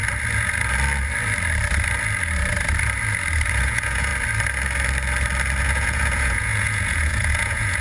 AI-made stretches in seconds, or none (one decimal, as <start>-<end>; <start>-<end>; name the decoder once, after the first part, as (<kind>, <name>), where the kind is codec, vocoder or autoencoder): 3.5-4.1 (vocoder, Vocos); 5.6-7.8

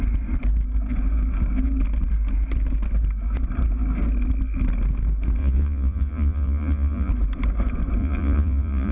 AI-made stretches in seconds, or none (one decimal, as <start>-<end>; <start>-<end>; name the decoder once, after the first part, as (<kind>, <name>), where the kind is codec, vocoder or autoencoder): 5.4-7.1 (vocoder, Vocos); 8.0-8.9

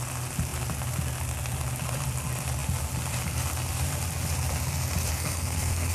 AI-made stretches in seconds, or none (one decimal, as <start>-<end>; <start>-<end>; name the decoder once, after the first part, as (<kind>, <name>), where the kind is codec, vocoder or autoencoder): 5.1-5.9 (codec, SNAC)

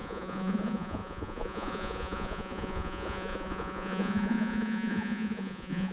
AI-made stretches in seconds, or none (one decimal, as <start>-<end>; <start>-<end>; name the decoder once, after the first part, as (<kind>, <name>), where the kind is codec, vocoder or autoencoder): 0.0-5.9 (vocoder, Vocos)

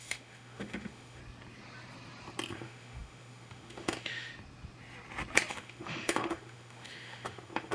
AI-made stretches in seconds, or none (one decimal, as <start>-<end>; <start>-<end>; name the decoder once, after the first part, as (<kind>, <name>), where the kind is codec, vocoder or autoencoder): 0.0-1.2 (autoencoder, DAC-VAE); 2.5-4.3; 5.5-7.7